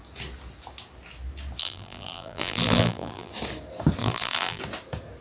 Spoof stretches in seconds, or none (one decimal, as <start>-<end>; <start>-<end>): 1.6-3.3; 4.0-4.6